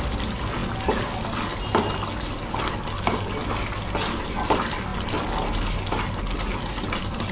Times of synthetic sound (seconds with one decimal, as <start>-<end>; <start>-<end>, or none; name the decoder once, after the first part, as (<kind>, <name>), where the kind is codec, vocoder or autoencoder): none